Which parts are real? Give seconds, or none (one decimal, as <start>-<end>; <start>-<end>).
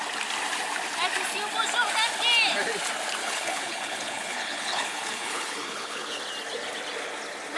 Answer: 0.0-3.2; 6.2-7.6